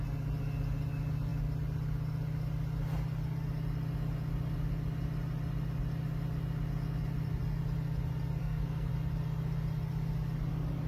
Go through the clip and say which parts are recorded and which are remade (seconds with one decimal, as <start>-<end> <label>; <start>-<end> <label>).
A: 0.0-8.4 recorded; 8.4-8.9 remade; 8.9-10.9 recorded